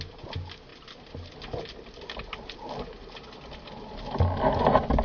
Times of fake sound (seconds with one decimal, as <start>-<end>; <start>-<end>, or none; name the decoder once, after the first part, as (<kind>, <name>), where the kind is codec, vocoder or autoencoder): none